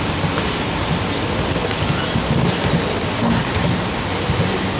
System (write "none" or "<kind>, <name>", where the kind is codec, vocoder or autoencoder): none